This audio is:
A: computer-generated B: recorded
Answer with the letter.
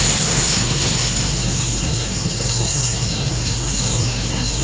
A